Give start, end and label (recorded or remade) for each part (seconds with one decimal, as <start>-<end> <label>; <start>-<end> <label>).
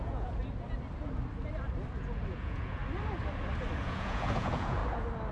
0.0-0.4 remade; 0.4-2.3 recorded; 2.3-2.8 remade; 2.8-3.8 recorded; 3.8-4.8 remade; 4.8-5.3 recorded